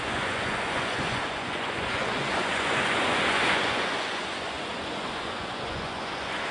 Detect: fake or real fake